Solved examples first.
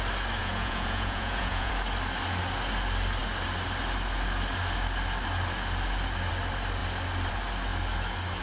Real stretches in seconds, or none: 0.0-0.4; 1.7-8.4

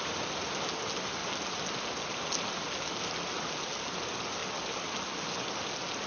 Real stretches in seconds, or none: 0.0-6.1

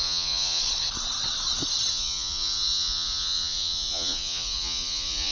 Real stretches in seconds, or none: 0.6-1.9

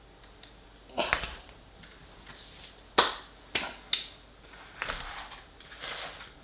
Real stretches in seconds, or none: 0.0-6.4

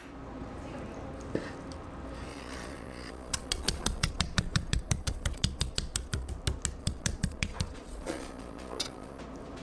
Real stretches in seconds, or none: 0.0-2.3; 6.3-6.8; 9.2-9.6

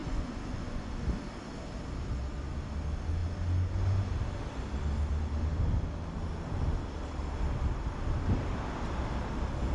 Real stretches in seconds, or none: 0.9-9.7

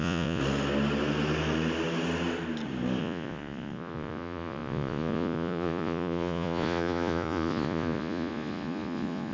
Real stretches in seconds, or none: 0.4-3.0